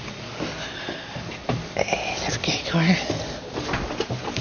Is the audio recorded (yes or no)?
yes